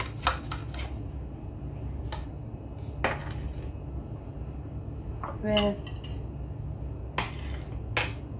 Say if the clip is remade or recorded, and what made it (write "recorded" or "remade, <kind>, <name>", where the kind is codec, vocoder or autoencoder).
recorded